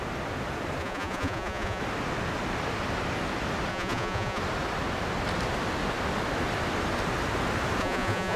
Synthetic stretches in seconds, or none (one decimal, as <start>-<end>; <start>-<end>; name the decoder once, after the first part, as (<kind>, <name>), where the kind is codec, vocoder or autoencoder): 0.8-1.8 (vocoder, Vocos); 3.7-4.4; 7.8-8.4